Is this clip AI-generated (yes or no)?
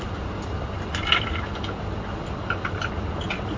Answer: no